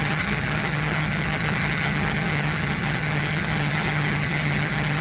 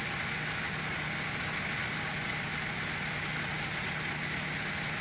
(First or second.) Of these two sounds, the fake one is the first